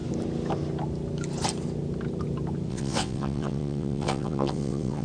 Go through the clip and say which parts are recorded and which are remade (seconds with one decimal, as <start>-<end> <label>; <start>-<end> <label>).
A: 0.0-2.7 recorded; 2.7-5.0 remade